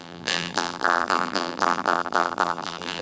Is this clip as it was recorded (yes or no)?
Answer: no